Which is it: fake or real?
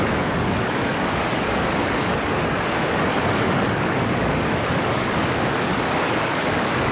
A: fake